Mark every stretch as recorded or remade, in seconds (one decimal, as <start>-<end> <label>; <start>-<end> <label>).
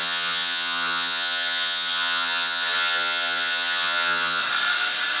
0.0-4.4 remade; 4.4-5.2 recorded